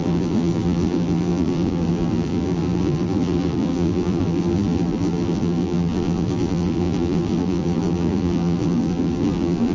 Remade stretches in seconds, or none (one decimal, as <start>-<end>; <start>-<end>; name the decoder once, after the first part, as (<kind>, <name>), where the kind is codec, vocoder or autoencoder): 0.0-9.7 (vocoder, BigVGAN v2)